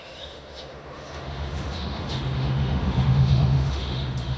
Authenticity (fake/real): fake